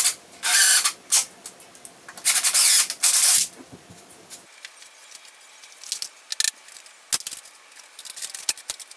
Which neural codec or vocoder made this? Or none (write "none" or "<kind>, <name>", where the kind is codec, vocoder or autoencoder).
none